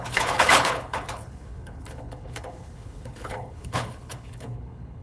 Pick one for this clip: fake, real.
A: fake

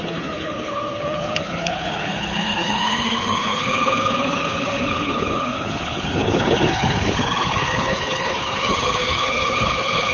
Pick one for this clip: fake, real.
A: fake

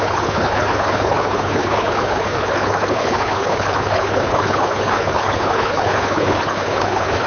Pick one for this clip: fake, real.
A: fake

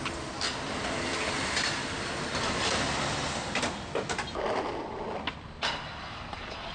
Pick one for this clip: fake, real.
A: real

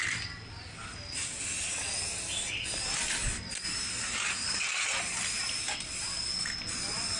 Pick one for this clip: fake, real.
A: real